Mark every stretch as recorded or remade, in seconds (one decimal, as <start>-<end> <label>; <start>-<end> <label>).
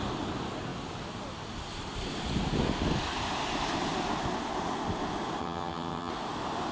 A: 0.0-5.4 recorded; 5.4-6.1 remade; 6.1-6.7 recorded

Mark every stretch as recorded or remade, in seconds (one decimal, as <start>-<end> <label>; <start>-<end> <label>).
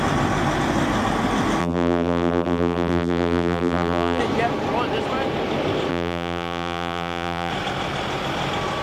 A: 0.0-1.6 recorded; 1.6-4.2 remade; 4.2-5.9 recorded; 5.9-7.5 remade; 7.5-8.8 recorded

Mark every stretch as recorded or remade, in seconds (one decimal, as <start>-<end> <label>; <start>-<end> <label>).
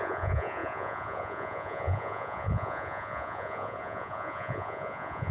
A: 0.0-5.3 remade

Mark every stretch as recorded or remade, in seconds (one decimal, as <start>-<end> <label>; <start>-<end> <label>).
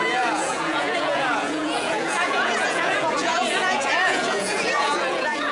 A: 0.0-5.5 remade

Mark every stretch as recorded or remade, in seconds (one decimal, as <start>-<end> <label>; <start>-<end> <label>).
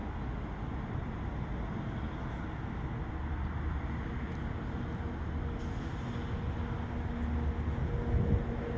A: 0.0-8.8 recorded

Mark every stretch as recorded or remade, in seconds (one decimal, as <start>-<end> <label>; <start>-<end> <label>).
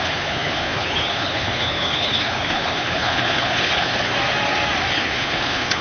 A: 0.0-4.1 remade; 4.1-4.9 recorded; 4.9-5.8 remade